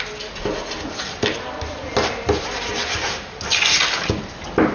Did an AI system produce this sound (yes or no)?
no